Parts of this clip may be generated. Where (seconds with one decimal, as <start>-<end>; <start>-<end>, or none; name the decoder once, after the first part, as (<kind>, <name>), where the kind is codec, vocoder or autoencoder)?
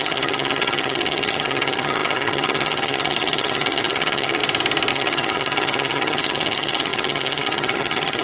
0.0-4.4 (vocoder, HiFi-GAN); 4.9-8.2